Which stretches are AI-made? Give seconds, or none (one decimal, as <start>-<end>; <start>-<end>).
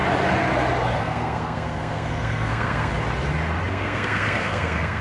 1.0-2.9; 3.7-5.0